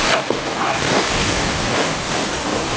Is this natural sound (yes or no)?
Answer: no